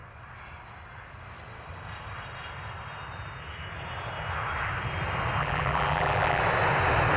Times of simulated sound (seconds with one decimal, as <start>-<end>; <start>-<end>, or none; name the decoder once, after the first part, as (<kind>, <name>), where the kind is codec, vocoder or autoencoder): 5.4-6.4 (vocoder, BigVGAN v2)